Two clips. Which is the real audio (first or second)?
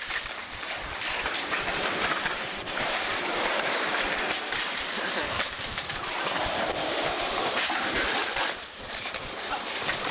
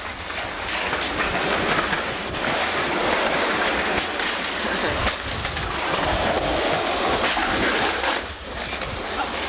second